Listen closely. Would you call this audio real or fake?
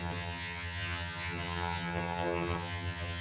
fake